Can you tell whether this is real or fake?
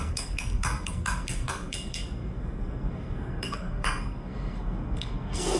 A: fake